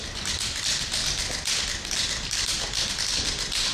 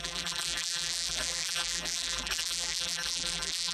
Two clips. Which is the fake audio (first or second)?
second